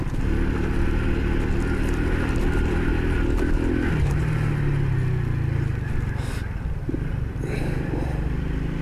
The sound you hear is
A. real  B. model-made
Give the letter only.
A